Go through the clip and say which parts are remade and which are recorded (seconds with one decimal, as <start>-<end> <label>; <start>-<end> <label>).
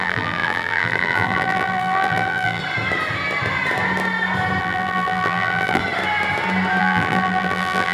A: 0.0-2.6 remade; 2.6-4.6 recorded; 4.6-5.8 remade; 5.8-6.8 recorded; 6.8-7.9 remade